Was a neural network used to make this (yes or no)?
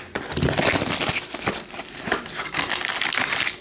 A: yes